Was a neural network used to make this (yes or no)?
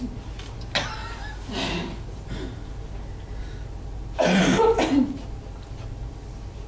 no